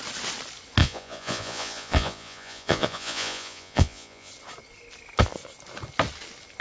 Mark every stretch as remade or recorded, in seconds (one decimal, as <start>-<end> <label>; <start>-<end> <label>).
0.0-0.8 recorded; 0.8-4.3 remade; 4.3-6.6 recorded